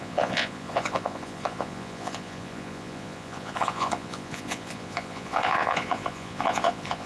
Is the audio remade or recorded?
remade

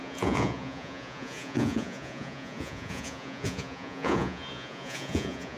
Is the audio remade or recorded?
remade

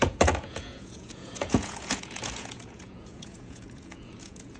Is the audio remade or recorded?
remade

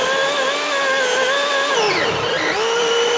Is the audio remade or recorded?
recorded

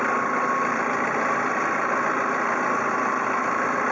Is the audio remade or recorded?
recorded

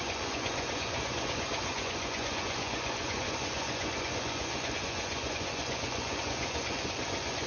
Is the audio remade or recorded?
remade